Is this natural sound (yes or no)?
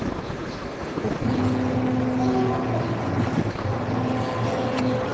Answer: yes